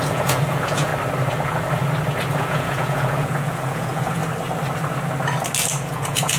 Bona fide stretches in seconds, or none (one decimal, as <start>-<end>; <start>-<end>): 0.9-2.4; 4.2-5.8